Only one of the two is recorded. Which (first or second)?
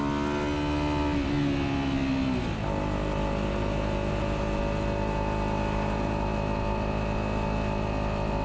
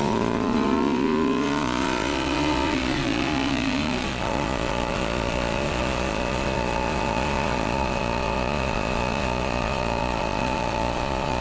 first